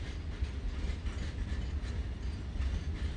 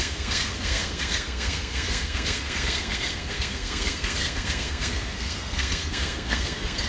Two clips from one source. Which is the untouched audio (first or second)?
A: first